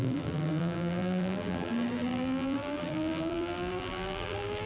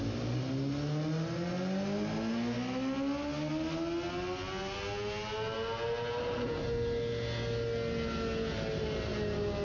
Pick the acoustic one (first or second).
second